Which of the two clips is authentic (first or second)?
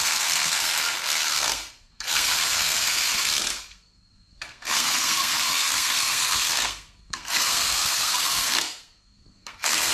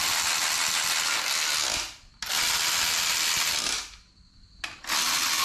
second